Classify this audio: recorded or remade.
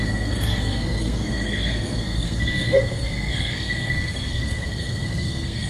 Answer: remade